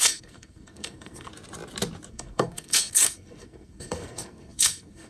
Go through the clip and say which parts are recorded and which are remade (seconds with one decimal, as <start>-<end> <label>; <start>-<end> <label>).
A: 0.0-1.3 remade; 1.3-2.1 recorded; 2.1-5.1 remade